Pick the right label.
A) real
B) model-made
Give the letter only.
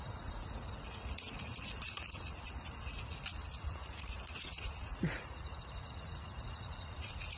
B